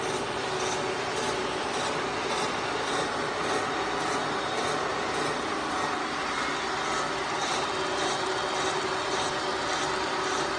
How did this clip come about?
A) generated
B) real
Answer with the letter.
B